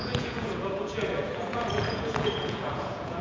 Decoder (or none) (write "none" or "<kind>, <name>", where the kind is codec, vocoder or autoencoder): vocoder, Vocos